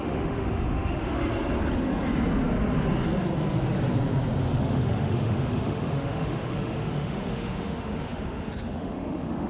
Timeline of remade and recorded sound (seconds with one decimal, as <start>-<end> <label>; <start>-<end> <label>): 0.0-1.3 remade; 1.3-4.6 recorded; 4.6-9.5 remade